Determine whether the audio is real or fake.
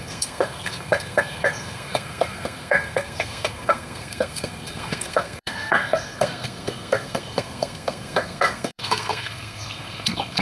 fake